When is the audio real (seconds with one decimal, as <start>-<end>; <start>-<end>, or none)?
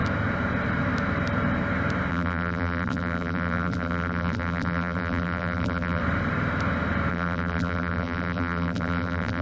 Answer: 0.0-2.1; 6.0-7.1